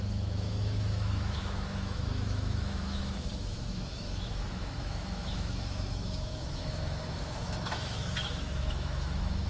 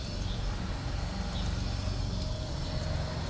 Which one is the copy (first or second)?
first